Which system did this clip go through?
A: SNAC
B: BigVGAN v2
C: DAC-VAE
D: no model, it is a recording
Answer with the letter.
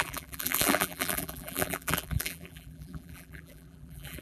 B